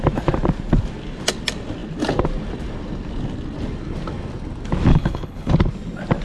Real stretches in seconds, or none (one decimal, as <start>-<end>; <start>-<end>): 0.0-4.9; 5.5-6.2